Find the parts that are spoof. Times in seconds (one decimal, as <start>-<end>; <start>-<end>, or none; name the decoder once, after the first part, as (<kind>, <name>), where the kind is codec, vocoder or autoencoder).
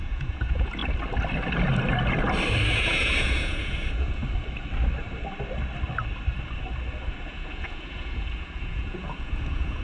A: 0.0-0.8 (vocoder, Vocos); 2.7-4.2; 7.1-9.8